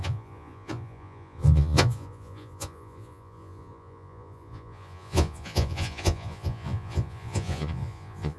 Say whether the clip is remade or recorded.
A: remade